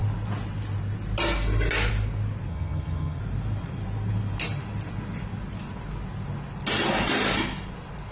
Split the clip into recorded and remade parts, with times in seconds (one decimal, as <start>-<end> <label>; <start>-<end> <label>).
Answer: 0.0-2.5 recorded; 2.5-3.2 remade; 3.2-8.1 recorded